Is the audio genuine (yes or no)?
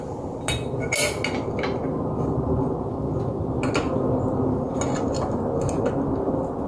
yes